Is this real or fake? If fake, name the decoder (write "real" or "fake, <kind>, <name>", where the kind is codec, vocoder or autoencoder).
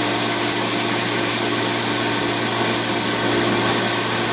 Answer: real